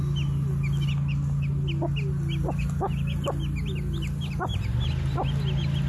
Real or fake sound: real